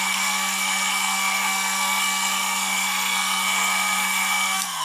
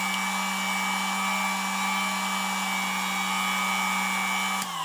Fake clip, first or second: first